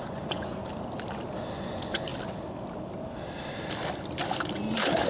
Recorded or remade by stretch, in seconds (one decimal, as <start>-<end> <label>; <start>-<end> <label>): 0.0-0.6 remade; 0.6-1.4 recorded; 1.4-2.1 remade; 2.1-5.1 recorded

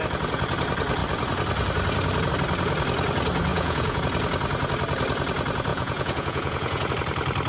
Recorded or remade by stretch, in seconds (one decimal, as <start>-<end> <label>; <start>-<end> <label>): 0.0-3.5 recorded; 3.5-4.0 remade; 4.0-5.7 recorded; 5.7-6.9 remade; 6.9-7.5 recorded

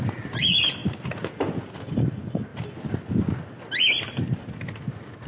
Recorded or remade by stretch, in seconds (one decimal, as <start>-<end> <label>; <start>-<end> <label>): 0.0-0.8 recorded; 0.8-1.6 remade; 1.6-5.3 recorded

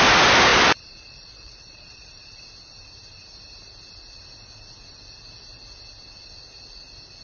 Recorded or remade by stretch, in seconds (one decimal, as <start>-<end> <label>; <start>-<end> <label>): 0.0-0.5 recorded; 0.5-2.4 remade; 2.4-7.2 recorded